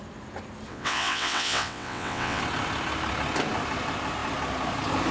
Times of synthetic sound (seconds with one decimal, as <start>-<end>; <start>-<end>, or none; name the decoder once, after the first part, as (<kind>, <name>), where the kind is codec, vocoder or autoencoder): 0.7-2.4 (vocoder, WaveNeXt)